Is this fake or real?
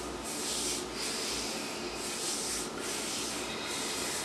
real